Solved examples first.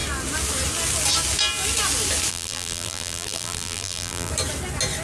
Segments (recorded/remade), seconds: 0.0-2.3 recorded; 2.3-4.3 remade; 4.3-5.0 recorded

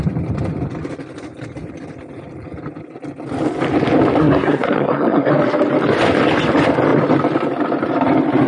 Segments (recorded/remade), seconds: 0.0-4.2 recorded; 4.2-5.3 remade; 5.3-8.5 recorded

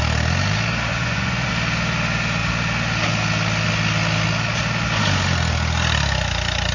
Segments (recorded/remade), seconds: 0.0-0.9 recorded; 0.9-1.5 remade; 1.5-6.7 recorded